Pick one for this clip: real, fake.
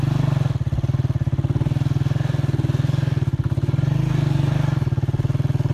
real